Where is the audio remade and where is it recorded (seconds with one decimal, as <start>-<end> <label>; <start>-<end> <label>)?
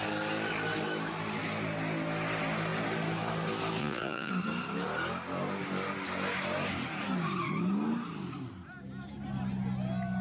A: 0.0-3.8 recorded; 3.8-4.3 remade; 4.3-10.2 recorded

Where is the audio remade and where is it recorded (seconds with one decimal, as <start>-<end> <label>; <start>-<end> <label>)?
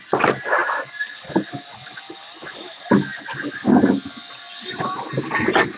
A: 0.0-5.8 recorded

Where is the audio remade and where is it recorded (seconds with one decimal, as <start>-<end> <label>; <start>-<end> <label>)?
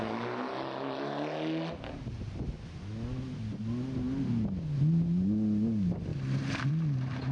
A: 0.0-7.3 recorded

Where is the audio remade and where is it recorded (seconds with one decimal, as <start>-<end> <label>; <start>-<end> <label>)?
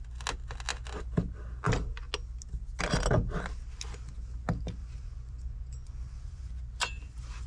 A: 0.0-4.8 recorded; 4.8-6.6 remade; 6.6-7.5 recorded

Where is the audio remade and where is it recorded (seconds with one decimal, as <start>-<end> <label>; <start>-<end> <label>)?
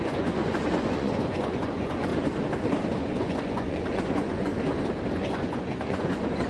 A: 0.0-2.1 remade; 2.1-3.0 recorded; 3.0-4.5 remade; 4.5-5.1 recorded; 5.1-6.5 remade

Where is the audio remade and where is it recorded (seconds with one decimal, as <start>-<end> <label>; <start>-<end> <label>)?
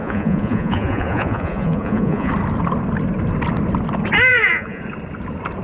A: 0.0-2.3 remade; 2.3-4.3 recorded; 4.3-4.8 remade; 4.8-5.6 recorded